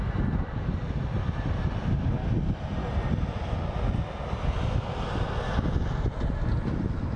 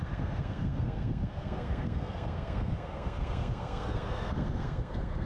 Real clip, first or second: first